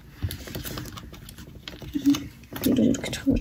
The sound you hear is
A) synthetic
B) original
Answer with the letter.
B